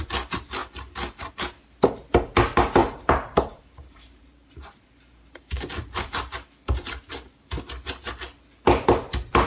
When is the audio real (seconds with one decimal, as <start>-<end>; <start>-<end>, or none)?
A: 0.0-2.8; 7.6-9.5